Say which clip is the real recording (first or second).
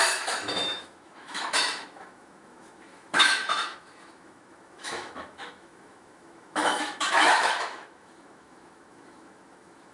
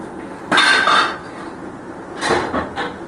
second